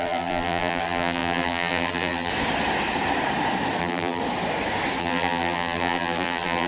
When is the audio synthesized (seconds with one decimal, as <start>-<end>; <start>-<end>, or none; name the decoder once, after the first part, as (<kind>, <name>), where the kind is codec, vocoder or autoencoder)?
0.0-2.3 (vocoder, BigVGAN v2); 3.8-4.2; 5.0-6.7